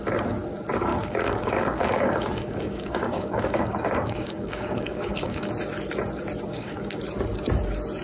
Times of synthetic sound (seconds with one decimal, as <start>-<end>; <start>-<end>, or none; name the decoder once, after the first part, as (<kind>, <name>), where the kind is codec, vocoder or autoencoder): 0.9-5.5 (codec, DAC); 6.5-7.0